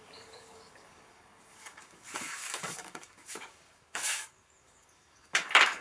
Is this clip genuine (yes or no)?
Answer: no